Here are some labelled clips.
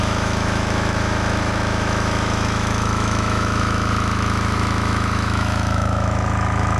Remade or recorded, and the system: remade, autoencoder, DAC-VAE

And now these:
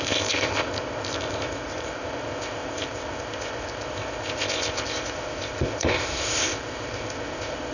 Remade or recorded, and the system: remade, codec, ZipCodec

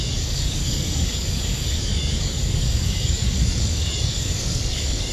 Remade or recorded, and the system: remade, codec, DAC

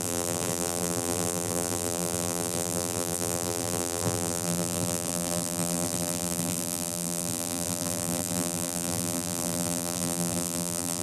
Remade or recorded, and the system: remade, vocoder, BigVGAN v2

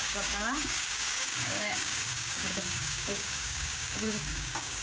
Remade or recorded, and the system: remade, codec, DAC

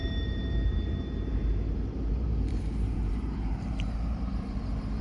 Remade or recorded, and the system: remade, vocoder, BigVGAN v2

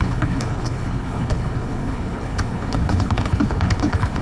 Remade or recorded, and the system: remade, codec, HILCodec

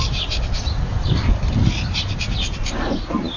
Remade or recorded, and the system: recorded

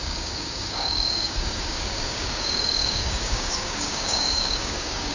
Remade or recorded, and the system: remade, codec, DAC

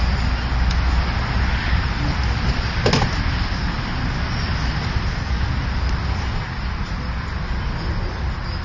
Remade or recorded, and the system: recorded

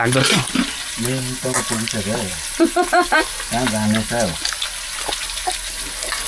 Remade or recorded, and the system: recorded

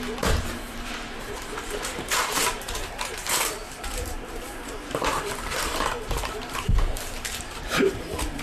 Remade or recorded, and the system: remade, vocoder, BigVGAN v2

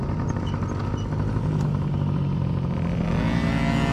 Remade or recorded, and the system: recorded